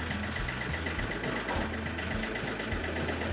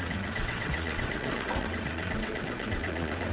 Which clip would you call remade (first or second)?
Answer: second